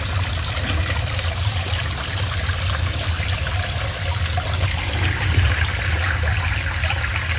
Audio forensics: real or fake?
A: real